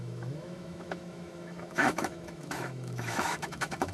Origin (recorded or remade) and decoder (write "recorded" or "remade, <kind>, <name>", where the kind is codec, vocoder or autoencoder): remade, autoencoder, DAC-VAE